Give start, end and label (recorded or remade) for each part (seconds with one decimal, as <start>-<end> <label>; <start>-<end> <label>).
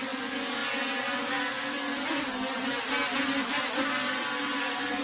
0.0-5.0 recorded